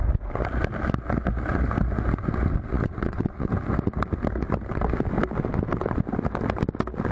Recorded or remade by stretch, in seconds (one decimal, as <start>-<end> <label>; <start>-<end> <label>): 0.0-2.7 recorded; 2.7-3.5 remade; 3.5-7.1 recorded